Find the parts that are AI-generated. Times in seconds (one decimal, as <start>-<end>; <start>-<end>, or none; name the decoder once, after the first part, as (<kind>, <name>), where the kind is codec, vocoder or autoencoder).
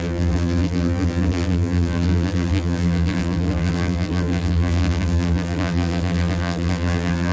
0.0-7.3 (vocoder, BigVGAN v2)